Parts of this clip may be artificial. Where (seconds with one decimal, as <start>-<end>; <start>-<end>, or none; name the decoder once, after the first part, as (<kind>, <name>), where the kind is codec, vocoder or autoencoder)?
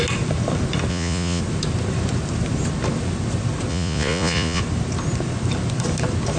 0.9-1.4 (vocoder, Vocos); 3.7-4.6